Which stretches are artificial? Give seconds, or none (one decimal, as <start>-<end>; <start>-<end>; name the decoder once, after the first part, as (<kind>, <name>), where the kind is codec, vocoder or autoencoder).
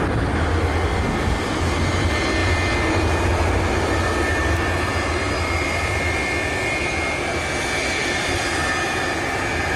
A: none